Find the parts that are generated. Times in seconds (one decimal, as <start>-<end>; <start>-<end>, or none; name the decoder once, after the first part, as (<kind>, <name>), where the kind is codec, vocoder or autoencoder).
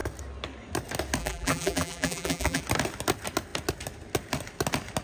1.2-2.6 (vocoder, BigVGAN v2)